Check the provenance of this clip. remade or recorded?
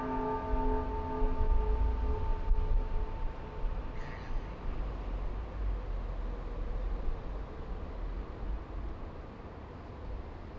recorded